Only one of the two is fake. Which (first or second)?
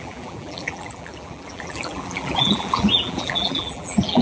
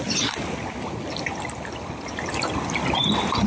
first